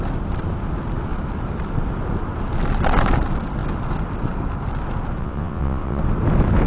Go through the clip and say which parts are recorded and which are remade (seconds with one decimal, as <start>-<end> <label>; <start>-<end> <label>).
0.0-5.2 recorded; 5.2-6.0 remade; 6.0-6.7 recorded